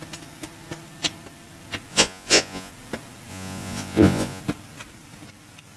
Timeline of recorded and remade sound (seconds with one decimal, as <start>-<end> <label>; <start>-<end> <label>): 0.0-1.9 recorded; 1.9-2.7 remade; 2.7-3.3 recorded; 3.3-4.4 remade; 4.4-5.8 recorded